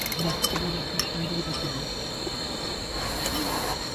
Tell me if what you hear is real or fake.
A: real